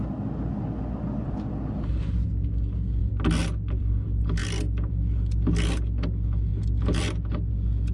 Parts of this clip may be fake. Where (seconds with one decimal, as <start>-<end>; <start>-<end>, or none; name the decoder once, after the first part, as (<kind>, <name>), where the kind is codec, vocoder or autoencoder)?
none